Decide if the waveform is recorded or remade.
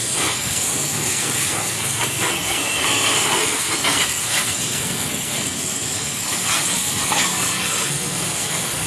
remade